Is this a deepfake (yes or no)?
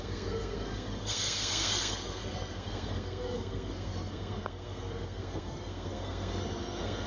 yes